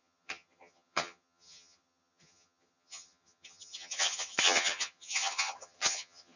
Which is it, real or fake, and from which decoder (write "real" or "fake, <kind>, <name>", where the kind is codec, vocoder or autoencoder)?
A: fake, vocoder, HiFi-GAN